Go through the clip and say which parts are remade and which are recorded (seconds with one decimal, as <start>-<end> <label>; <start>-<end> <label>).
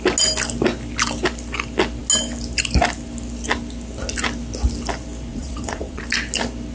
0.0-5.3 recorded; 5.3-6.0 remade; 6.0-6.7 recorded